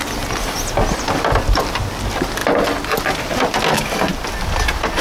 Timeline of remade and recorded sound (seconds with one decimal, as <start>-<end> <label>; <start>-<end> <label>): 0.0-5.0 recorded